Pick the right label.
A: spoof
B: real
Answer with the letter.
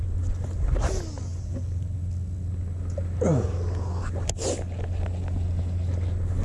B